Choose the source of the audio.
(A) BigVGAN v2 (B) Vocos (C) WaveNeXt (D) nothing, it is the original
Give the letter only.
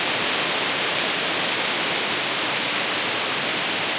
D